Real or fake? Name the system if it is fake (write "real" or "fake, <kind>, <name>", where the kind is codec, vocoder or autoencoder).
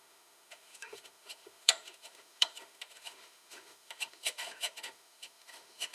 fake, autoencoder, DAC-VAE